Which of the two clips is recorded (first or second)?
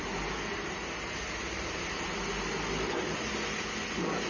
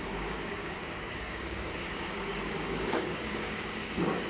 first